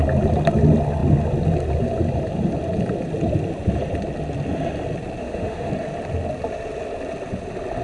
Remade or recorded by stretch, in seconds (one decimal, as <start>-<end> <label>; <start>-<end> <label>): 0.0-5.2 recorded; 5.2-5.7 remade; 5.7-7.8 recorded